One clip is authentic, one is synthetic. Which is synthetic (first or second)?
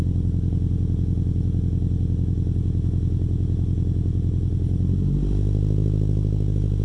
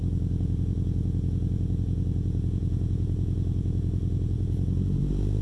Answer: second